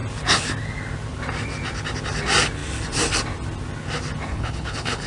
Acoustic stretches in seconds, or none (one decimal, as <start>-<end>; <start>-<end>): 0.0-4.3

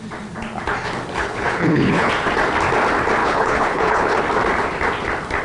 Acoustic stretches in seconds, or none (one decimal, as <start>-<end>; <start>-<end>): 0.0-1.2; 2.1-3.2; 4.2-5.4